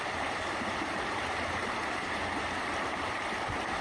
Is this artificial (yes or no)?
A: yes